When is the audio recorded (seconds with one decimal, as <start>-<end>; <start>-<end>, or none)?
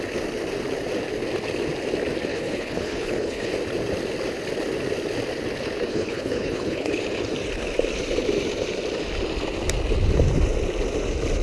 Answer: 0.0-2.3; 3.5-5.9; 7.0-11.4